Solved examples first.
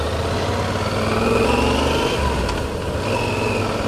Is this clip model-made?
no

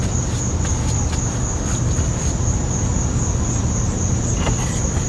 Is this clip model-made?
no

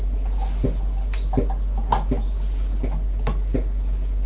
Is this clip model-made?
no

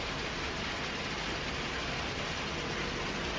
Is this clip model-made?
no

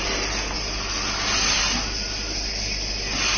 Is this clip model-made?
no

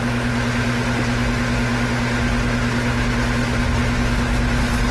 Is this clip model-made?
no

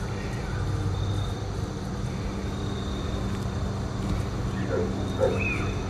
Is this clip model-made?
no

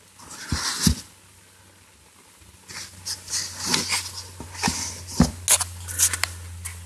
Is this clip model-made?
no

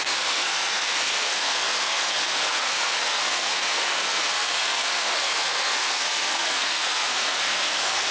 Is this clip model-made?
yes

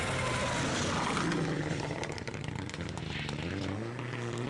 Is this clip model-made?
no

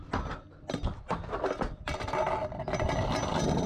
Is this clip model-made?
no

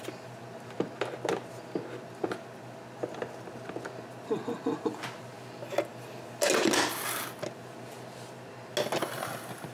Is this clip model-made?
no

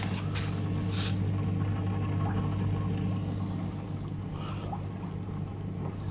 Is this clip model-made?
no